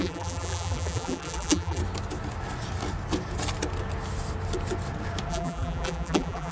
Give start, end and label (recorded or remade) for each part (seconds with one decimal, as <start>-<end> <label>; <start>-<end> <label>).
0.0-1.8 remade; 1.8-5.3 recorded; 5.3-6.5 remade